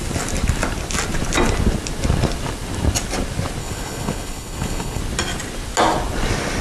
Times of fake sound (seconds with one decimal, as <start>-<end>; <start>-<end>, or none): 3.6-5.0